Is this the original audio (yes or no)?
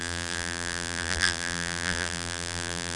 no